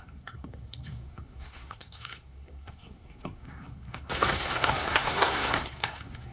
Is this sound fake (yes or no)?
yes